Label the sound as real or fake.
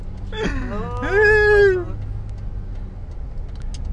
real